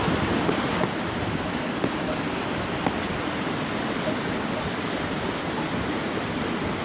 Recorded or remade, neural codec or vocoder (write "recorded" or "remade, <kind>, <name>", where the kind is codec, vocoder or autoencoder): recorded